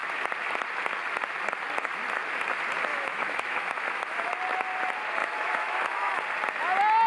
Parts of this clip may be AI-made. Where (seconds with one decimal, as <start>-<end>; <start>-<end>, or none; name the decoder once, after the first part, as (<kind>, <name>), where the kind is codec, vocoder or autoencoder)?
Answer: 2.9-4.4 (autoencoder, DAC-VAE); 5.2-6.2